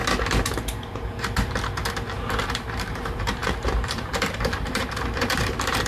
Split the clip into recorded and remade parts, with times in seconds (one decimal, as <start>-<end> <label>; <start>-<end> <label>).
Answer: 0.0-2.4 recorded; 2.4-5.9 remade

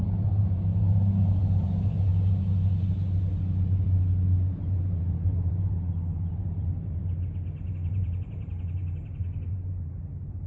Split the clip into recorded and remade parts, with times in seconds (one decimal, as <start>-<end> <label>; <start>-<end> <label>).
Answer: 0.0-2.1 remade; 2.1-4.7 recorded; 4.7-7.0 remade; 7.0-7.7 recorded; 7.7-8.8 remade; 8.8-9.5 recorded; 9.5-10.5 remade